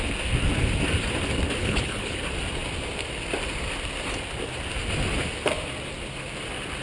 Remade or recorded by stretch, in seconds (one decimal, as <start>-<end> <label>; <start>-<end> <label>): 0.0-1.6 recorded; 1.6-2.2 remade; 2.2-6.8 recorded